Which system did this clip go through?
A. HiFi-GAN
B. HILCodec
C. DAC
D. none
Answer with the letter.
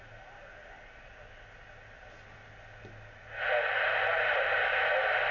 D